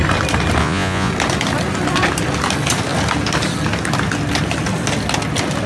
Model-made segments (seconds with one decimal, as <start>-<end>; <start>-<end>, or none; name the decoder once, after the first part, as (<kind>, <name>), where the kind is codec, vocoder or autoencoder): 0.6-1.1 (vocoder, Vocos)